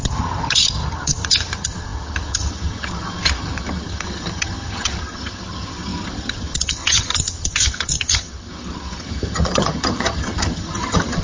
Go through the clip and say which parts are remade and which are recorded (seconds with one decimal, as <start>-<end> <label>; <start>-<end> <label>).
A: 0.0-11.2 remade